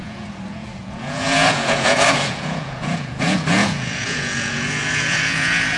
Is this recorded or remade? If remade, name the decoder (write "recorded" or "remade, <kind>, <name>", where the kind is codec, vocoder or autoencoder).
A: remade, vocoder, Vocos